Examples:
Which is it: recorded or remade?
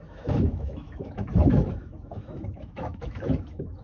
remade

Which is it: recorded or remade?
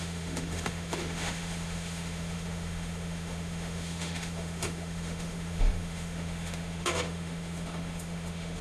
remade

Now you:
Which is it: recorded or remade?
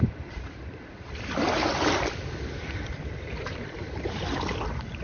recorded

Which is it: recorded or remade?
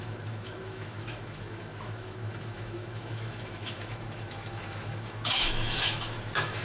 remade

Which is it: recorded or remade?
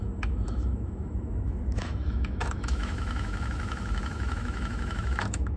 remade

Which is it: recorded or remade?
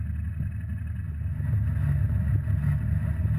recorded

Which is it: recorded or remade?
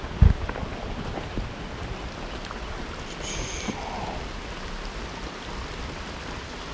recorded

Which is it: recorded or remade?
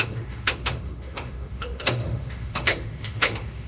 remade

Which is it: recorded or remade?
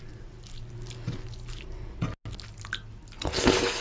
recorded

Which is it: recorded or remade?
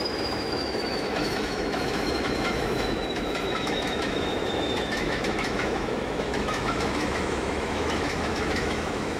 remade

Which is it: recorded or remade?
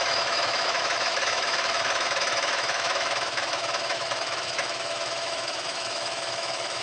remade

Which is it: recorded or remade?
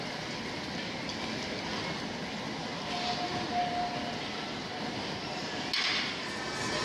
recorded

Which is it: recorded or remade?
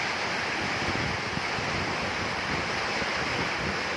recorded